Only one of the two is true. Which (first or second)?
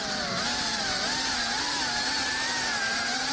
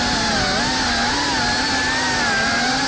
second